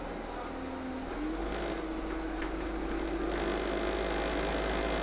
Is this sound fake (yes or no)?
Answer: no